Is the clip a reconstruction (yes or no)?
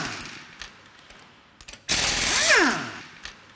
no